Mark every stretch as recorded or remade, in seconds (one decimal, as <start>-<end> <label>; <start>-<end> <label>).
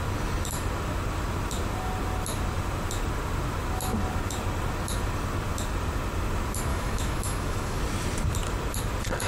0.0-6.7 recorded; 6.7-7.8 remade; 7.8-9.3 recorded